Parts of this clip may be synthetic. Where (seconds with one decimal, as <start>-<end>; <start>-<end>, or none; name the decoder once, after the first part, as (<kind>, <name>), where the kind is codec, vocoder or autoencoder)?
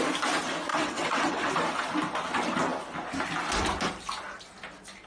0.7-1.5 (vocoder, WaveNeXt)